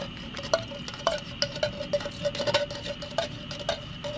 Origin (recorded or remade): recorded